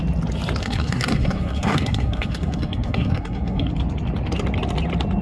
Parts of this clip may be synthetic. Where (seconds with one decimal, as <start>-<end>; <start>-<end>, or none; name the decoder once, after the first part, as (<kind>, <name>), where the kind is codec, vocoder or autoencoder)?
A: 0.6-3.7 (codec, SNAC)